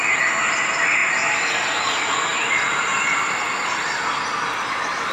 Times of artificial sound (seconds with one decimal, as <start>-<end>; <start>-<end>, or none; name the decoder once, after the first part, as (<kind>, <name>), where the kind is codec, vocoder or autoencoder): none